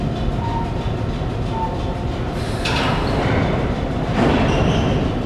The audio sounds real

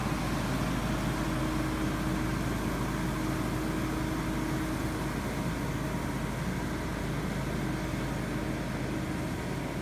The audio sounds real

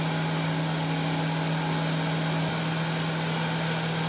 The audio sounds real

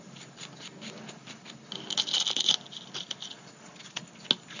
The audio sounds real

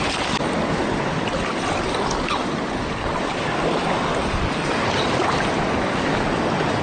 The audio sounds real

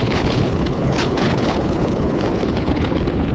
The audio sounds fake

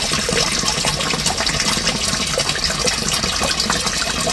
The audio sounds real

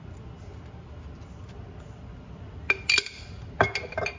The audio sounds real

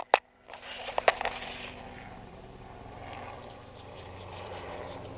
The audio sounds fake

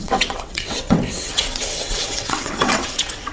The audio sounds fake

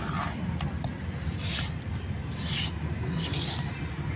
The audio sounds real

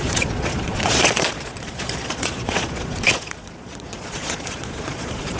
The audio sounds fake